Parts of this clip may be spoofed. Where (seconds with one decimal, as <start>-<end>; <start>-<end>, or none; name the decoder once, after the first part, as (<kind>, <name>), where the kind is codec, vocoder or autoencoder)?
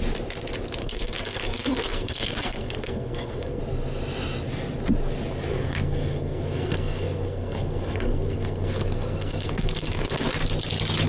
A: 0.8-3.6 (codec, SNAC); 5.5-10.3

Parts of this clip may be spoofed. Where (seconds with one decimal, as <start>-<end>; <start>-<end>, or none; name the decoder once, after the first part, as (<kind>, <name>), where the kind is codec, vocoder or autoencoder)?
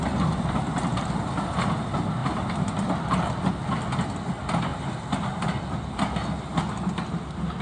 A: none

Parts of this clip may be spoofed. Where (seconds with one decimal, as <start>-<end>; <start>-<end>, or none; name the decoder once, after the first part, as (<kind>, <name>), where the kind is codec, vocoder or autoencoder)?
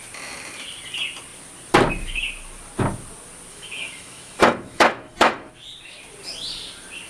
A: 3.5-5.5 (autoencoder, DAC-VAE)